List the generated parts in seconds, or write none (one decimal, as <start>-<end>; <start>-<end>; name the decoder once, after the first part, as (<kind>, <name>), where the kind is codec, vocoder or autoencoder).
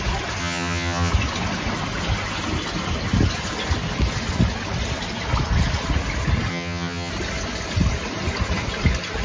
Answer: 0.4-1.1 (vocoder, HiFi-GAN); 6.5-7.1